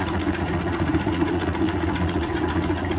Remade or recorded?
remade